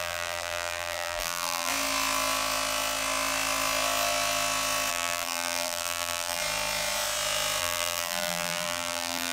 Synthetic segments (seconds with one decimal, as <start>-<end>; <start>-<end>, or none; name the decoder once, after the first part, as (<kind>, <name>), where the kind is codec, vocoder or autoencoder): 0.0-1.7 (vocoder, BigVGAN v2); 4.9-6.4; 7.6-9.3